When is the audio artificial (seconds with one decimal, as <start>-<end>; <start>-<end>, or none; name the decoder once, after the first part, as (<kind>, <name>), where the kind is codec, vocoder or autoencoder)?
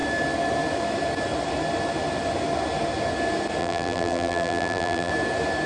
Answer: 3.6-5.1 (vocoder, BigVGAN v2)